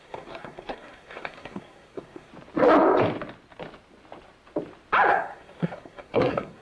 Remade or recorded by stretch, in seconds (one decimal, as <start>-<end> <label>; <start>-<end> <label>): 0.0-2.3 remade; 2.3-5.1 recorded; 5.1-6.6 remade